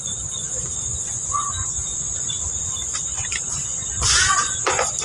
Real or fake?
fake